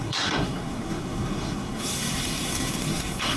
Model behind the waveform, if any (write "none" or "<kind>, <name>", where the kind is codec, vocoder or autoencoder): codec, SNAC